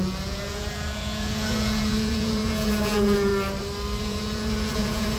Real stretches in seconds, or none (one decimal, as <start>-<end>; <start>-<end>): 3.3-4.0